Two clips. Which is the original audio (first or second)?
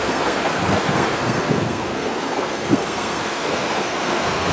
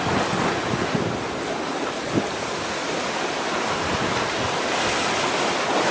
second